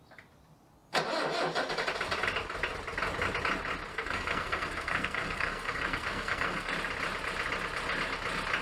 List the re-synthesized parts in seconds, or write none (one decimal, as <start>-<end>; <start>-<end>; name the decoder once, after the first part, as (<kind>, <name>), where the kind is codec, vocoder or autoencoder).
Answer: 3.9-6.7 (codec, SNAC)